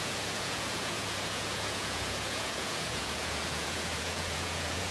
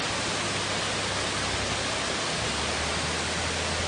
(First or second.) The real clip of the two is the second